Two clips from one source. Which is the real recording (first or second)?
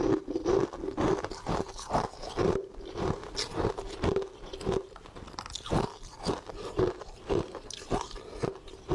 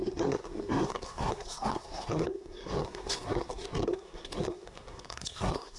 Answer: first